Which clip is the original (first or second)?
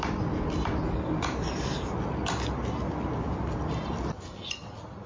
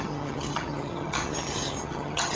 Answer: first